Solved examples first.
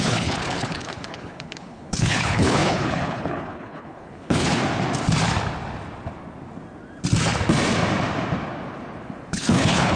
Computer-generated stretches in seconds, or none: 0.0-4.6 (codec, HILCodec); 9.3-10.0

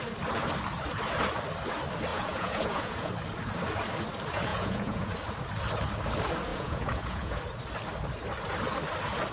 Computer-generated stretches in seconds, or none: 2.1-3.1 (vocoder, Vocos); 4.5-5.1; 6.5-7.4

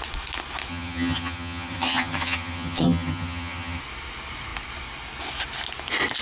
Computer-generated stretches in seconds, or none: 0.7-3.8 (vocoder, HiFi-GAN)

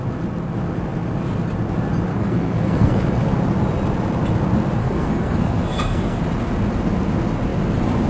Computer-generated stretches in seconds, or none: 2.1-3.1 (codec, SNAC); 4.8-6.2

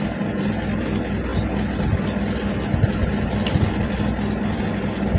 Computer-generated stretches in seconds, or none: none